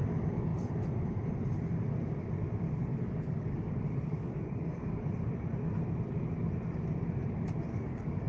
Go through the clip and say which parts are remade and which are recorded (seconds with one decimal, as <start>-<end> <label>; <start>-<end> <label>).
0.0-2.9 recorded; 2.9-5.1 remade; 5.1-7.7 recorded; 7.7-8.3 remade